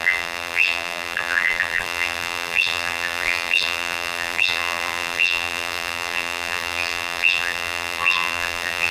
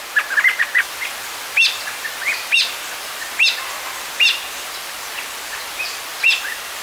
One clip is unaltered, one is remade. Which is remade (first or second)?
first